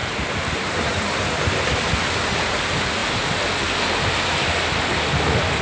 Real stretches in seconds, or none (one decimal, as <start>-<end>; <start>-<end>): 1.1-5.6